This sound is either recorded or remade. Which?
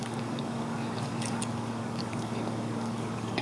remade